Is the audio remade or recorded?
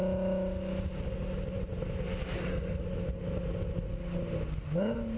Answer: recorded